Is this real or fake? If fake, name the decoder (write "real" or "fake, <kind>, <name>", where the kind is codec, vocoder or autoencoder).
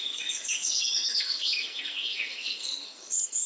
fake, codec, SNAC